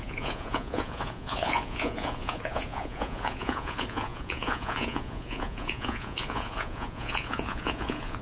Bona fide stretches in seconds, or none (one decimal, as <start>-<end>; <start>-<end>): none